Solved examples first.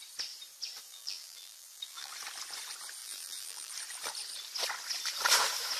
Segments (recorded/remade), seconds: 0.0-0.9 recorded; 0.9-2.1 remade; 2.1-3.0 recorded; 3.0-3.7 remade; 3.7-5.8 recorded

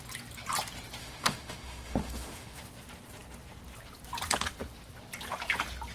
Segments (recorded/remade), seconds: 0.0-1.0 recorded; 1.0-2.6 remade; 2.6-5.9 recorded

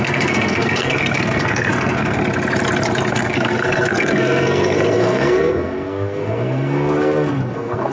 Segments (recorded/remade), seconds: 0.0-2.2 remade; 2.2-3.1 recorded; 3.1-7.9 remade

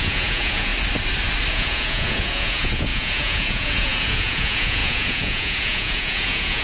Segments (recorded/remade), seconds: 0.0-0.7 remade; 0.7-1.5 recorded; 1.5-6.6 remade

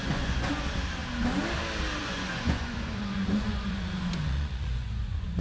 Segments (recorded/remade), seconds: 0.0-0.5 remade; 0.5-2.0 recorded; 2.0-5.4 remade

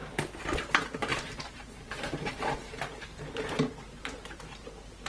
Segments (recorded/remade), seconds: 0.0-1.1 recorded; 1.1-3.5 remade; 3.5-5.1 recorded

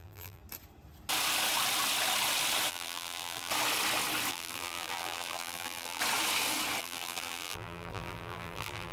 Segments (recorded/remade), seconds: 0.0-0.4 remade; 0.4-2.7 recorded; 2.7-3.5 remade; 3.5-4.3 recorded; 4.3-6.0 remade; 6.0-6.8 recorded; 6.8-8.9 remade